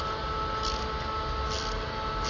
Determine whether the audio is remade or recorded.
recorded